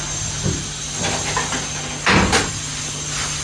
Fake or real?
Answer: real